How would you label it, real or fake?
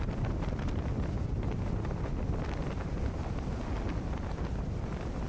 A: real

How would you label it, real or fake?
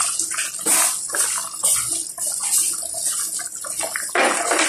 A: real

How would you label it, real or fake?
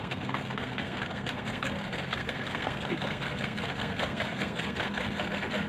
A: fake